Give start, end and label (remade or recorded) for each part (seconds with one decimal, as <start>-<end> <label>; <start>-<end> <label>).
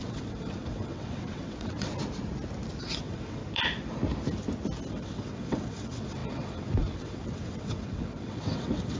0.0-1.9 remade; 1.9-2.8 recorded; 2.8-3.4 remade; 3.4-4.9 recorded; 4.9-9.0 remade